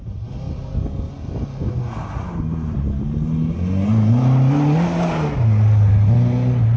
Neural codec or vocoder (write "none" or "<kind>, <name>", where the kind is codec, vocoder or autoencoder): none